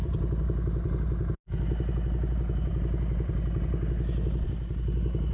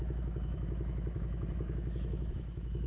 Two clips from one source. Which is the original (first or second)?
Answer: first